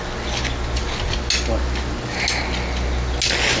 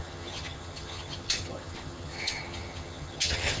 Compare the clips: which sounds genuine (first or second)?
first